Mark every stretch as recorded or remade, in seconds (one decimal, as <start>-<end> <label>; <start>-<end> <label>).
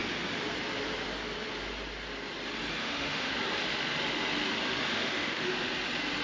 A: 0.0-2.8 recorded; 2.8-3.3 remade; 3.3-4.9 recorded; 4.9-5.5 remade; 5.5-6.2 recorded